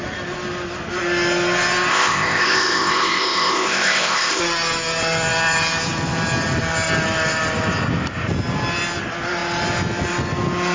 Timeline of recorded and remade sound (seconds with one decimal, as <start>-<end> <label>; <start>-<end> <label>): 0.0-1.9 recorded; 1.9-4.4 remade; 4.4-10.7 recorded